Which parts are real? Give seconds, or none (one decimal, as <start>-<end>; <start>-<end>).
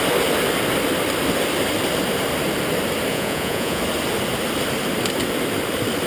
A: 0.0-3.1; 3.8-6.1